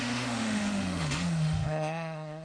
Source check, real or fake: fake